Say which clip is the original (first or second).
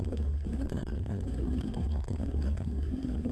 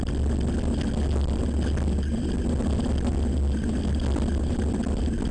second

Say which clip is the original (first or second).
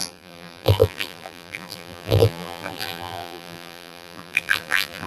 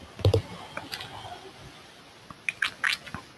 second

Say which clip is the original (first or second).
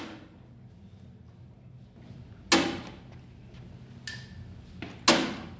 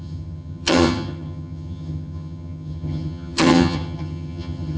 first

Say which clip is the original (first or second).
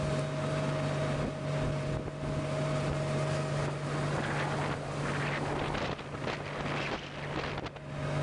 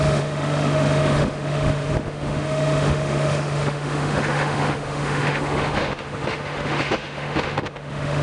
first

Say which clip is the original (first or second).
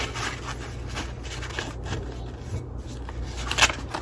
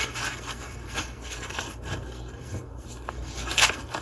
first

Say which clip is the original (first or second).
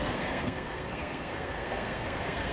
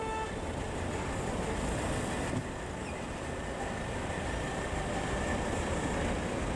second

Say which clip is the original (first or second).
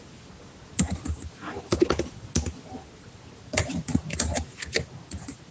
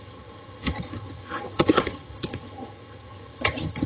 first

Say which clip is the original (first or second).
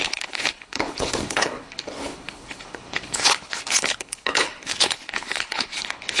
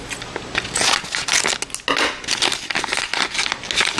second